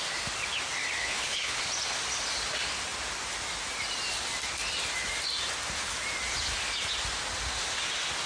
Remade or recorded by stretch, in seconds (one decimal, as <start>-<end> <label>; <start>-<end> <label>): 0.0-1.0 recorded; 1.0-1.6 remade; 1.6-8.3 recorded